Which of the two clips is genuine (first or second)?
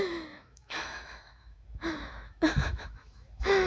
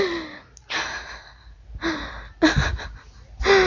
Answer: second